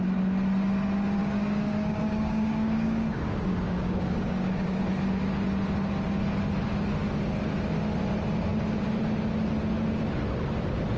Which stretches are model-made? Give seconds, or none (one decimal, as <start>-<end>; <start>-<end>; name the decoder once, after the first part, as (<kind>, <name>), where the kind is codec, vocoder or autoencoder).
1.2-4.8 (codec, DAC)